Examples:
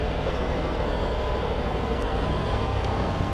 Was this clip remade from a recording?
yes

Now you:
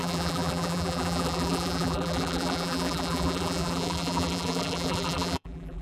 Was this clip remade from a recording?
yes